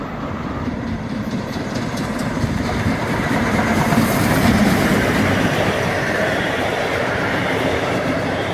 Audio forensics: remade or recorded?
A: remade